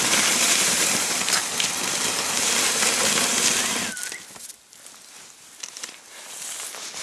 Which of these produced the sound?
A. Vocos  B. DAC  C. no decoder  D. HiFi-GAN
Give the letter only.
C